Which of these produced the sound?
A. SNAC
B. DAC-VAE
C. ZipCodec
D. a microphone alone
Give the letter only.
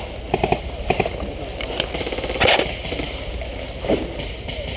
D